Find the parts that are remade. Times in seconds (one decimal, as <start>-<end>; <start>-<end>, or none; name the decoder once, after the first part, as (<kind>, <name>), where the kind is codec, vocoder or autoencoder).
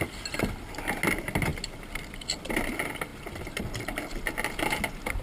none